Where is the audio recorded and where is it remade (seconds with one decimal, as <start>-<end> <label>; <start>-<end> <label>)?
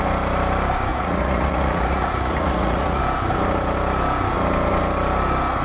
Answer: 0.0-0.9 recorded; 0.9-3.0 remade; 3.0-5.6 recorded